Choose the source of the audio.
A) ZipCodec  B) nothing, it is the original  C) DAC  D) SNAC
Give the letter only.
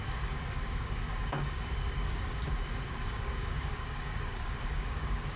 C